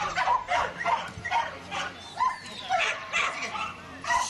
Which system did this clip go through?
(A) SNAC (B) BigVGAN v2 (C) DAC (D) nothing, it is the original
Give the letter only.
B